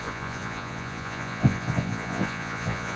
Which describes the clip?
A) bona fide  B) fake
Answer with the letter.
B